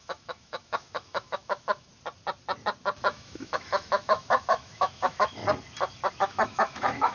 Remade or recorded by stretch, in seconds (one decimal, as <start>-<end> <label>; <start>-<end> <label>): 0.0-1.9 remade; 1.9-3.1 recorded; 3.1-5.4 remade; 5.4-6.1 recorded; 6.1-7.1 remade